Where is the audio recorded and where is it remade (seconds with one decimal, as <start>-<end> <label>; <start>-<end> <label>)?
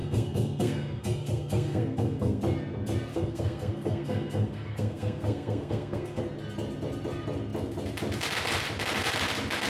0.0-2.4 remade; 2.4-3.1 recorded; 3.1-6.2 remade; 6.2-9.7 recorded